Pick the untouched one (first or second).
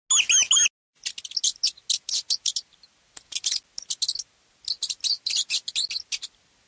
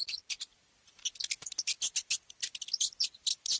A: first